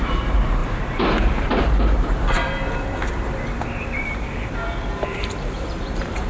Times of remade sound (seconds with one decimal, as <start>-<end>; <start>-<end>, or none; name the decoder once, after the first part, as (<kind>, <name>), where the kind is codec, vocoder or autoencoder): 0.0-3.0 (vocoder, BigVGAN v2); 3.8-6.3